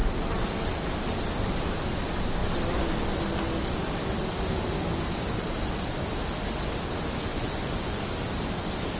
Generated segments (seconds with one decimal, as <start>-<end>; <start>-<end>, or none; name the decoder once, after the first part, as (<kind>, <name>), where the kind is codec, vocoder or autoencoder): 7.3-8.0 (vocoder, Vocos)